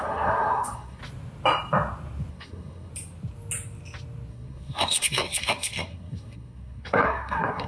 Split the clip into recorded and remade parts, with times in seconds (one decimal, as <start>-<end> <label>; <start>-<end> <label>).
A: 0.0-1.0 remade; 1.0-2.3 recorded; 2.3-2.9 remade; 2.9-4.3 recorded; 4.3-7.7 remade

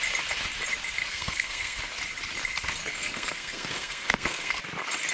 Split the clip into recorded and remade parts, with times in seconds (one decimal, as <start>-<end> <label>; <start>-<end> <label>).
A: 0.0-1.0 recorded; 1.0-1.8 remade; 1.8-2.8 recorded; 2.8-4.6 remade; 4.6-5.1 recorded

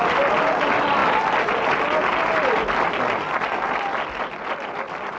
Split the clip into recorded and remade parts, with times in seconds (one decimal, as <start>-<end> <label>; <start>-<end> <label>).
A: 0.0-5.2 recorded

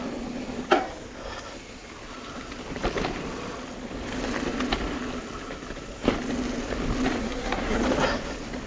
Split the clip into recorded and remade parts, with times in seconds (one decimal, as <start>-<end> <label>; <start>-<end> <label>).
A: 0.0-7.2 recorded; 7.2-7.8 remade; 7.8-8.7 recorded

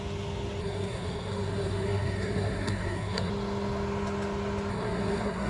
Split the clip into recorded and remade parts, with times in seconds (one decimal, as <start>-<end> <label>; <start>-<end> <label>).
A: 0.0-0.6 recorded; 0.6-3.3 remade; 3.3-4.7 recorded; 4.7-5.5 remade

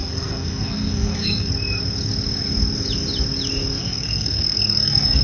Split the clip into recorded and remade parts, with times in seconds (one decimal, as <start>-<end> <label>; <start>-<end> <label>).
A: 0.0-1.5 remade; 1.5-3.8 recorded; 3.8-5.2 remade